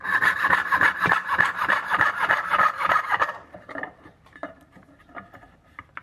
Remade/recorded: remade